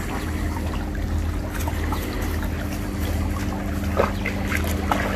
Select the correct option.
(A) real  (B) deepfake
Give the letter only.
A